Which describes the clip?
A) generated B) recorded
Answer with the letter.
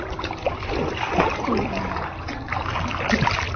B